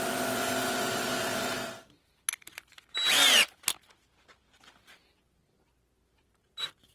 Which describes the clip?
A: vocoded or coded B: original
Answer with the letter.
B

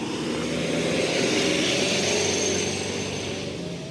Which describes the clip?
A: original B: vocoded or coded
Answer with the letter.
A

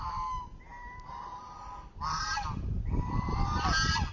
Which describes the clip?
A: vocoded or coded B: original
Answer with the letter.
B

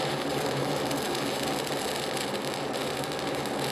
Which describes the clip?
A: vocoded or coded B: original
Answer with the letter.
B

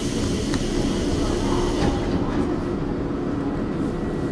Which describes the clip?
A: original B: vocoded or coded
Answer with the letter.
A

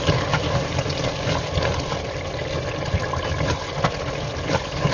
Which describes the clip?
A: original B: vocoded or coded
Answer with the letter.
A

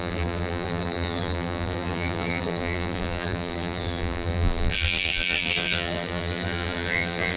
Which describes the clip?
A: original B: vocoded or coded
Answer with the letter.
B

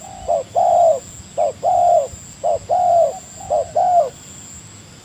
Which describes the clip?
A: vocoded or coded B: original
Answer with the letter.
B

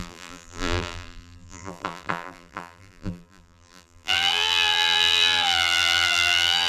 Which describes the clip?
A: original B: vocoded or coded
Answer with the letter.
B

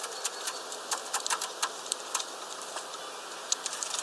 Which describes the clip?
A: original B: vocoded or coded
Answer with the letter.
A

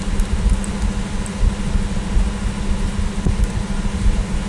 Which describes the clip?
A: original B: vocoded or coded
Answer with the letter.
A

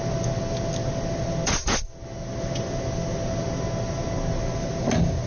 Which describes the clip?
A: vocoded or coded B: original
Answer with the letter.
B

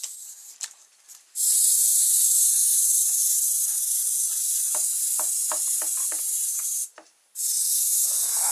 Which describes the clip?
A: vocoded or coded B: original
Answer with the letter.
A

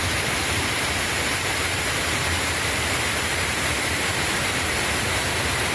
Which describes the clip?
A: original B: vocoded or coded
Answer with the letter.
B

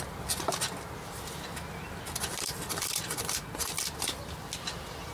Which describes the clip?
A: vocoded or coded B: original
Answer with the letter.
B